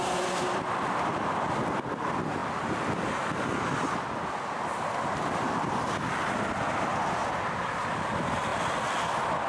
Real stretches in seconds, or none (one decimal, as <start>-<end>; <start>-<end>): 0.0-9.5

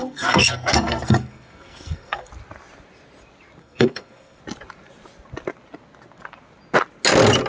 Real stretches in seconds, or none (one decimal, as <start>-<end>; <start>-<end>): 2.3-3.6; 4.4-7.5

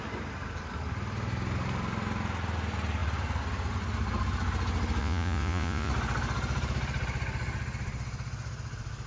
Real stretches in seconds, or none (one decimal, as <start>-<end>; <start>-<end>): 0.0-5.0; 5.9-9.1